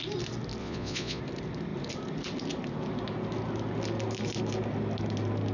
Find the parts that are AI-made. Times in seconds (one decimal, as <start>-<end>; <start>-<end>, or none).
0.6-1.2